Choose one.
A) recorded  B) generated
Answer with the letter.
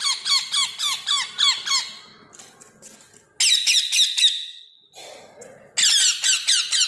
A